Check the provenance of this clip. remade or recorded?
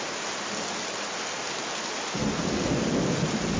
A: recorded